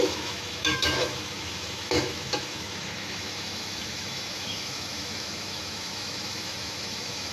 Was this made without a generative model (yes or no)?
no